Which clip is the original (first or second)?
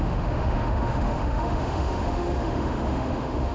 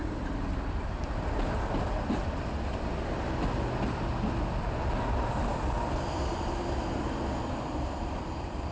second